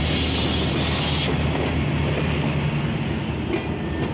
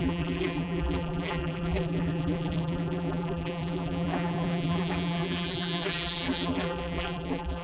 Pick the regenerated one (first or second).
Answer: second